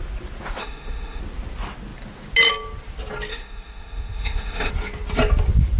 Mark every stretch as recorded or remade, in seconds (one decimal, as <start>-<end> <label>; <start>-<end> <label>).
0.0-0.6 recorded; 0.6-1.2 remade; 1.2-3.3 recorded; 3.3-4.7 remade; 4.7-5.8 recorded